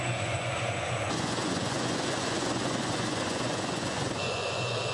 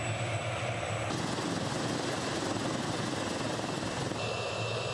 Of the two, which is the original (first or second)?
second